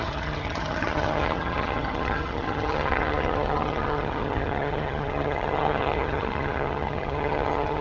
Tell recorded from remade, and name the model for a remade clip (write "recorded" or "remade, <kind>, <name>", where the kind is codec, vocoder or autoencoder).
remade, vocoder, HiFi-GAN